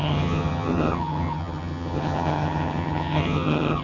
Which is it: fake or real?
fake